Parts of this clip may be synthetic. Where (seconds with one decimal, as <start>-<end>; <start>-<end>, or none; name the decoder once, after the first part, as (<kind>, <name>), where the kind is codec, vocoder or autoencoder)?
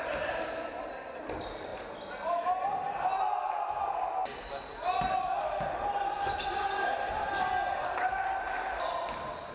none